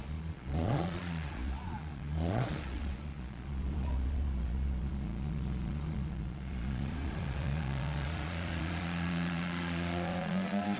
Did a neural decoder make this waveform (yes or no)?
yes